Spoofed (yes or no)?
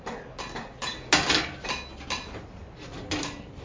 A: no